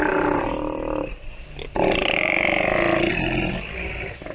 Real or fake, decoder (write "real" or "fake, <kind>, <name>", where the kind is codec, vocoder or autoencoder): real